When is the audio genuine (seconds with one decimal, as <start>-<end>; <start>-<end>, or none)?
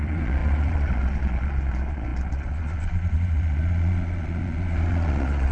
none